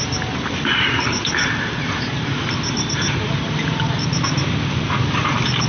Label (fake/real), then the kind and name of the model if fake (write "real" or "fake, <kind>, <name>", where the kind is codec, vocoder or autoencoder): fake, vocoder, BigVGAN v2